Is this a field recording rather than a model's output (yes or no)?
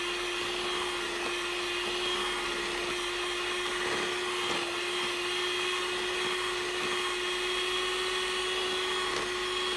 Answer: yes